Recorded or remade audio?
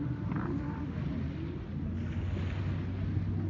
recorded